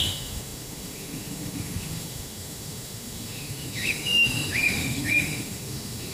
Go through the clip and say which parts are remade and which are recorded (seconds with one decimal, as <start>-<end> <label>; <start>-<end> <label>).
0.0-6.1 remade

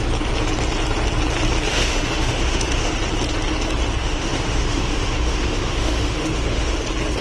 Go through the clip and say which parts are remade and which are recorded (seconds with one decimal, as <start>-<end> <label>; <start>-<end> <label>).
0.0-1.7 recorded; 1.7-2.9 remade; 2.9-4.0 recorded; 4.0-6.8 remade; 6.8-7.2 recorded

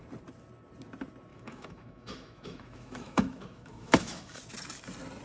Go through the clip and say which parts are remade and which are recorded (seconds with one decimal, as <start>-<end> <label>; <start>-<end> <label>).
0.0-1.3 recorded; 1.3-4.4 remade; 4.4-5.2 recorded

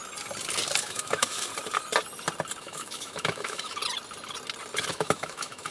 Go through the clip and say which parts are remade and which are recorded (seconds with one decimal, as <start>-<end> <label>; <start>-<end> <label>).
0.0-0.8 recorded; 0.8-1.5 remade; 1.5-2.6 recorded; 2.6-3.8 remade; 3.8-4.9 recorded; 4.9-5.7 remade